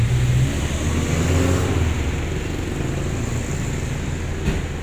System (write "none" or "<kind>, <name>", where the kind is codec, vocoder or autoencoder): none